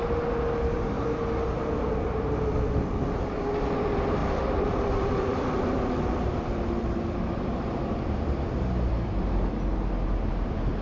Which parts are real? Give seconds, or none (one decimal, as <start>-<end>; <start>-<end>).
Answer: 0.0-4.2; 9.3-10.8